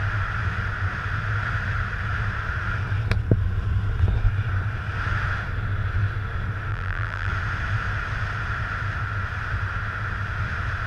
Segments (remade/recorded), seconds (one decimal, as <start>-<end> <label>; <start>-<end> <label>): 0.0-6.7 recorded; 6.7-7.3 remade; 7.3-10.9 recorded